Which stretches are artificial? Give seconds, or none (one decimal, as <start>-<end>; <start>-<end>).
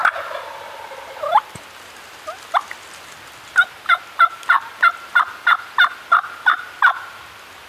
0.0-1.5